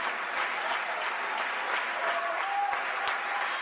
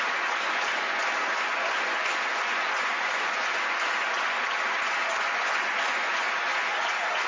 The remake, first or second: second